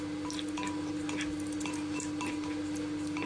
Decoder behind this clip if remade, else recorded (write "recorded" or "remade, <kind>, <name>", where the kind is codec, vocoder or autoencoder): recorded